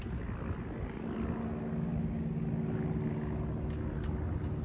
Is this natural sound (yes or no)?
yes